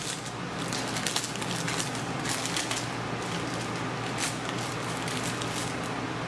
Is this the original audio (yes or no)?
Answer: yes